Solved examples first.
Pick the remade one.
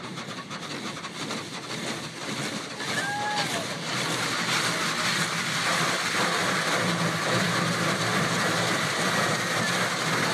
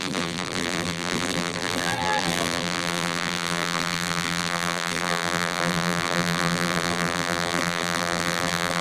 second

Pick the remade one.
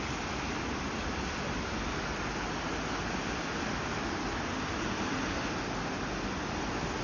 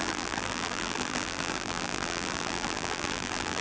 second